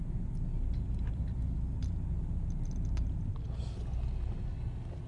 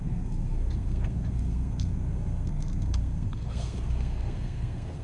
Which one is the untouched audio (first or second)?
first